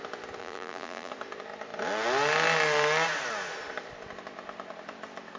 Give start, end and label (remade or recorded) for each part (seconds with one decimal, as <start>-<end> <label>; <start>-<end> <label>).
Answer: 0.0-0.4 recorded; 0.4-1.1 remade; 1.1-5.4 recorded